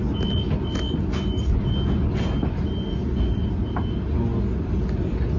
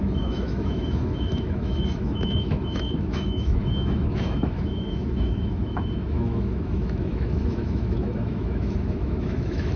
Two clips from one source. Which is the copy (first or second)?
second